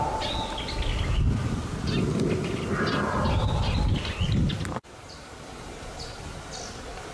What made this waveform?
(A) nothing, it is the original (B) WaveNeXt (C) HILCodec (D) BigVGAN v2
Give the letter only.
A